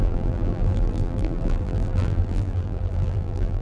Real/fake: fake